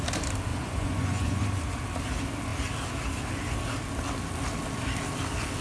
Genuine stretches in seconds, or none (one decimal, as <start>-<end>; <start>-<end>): 0.0-0.5; 1.4-5.6